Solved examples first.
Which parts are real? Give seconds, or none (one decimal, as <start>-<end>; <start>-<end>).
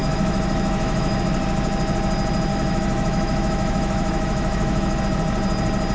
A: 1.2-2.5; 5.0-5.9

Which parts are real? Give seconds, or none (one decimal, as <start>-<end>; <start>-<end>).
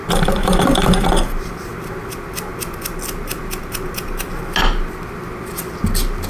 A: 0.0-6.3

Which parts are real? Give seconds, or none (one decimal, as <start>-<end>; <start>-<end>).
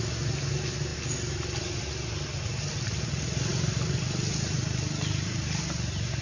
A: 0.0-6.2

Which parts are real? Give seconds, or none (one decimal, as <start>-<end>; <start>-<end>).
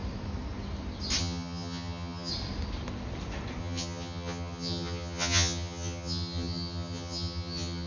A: 0.0-1.2; 2.3-3.6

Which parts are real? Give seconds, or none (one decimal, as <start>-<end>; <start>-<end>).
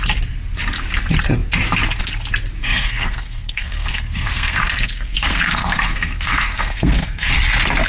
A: 0.0-2.6; 7.3-7.9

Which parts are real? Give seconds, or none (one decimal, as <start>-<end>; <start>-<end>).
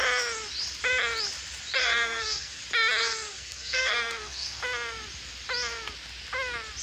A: 0.0-1.8; 2.6-3.0; 4.6-6.8